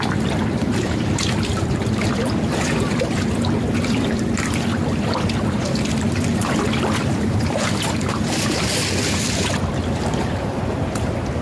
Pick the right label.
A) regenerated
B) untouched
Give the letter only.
A